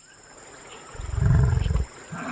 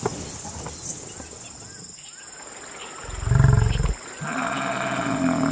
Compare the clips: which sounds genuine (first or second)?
second